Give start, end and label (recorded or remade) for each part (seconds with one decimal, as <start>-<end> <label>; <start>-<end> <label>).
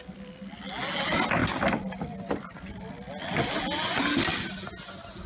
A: 0.0-5.3 recorded